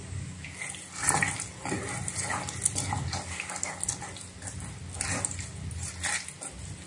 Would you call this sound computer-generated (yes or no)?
no